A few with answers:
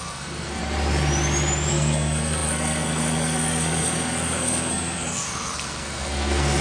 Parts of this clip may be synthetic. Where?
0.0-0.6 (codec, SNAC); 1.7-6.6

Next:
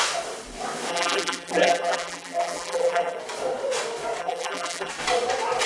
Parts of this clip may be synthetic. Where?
0.9-3.2 (vocoder, BigVGAN v2); 4.2-4.9

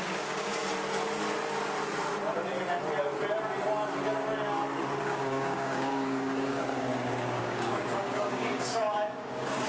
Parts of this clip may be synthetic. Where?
0.0-0.5 (codec, DAC); 5.0-6.9; 7.4-9.7

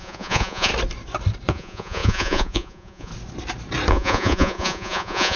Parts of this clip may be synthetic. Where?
0.0-0.7 (vocoder, Vocos); 1.5-3.1; 3.9-5.4

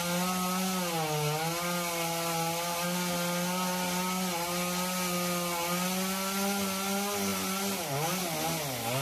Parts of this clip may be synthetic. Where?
none

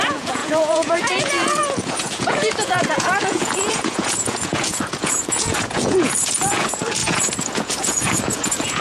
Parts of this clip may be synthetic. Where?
0.0-8.8 (vocoder, Vocos)

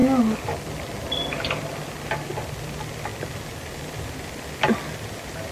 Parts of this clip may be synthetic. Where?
none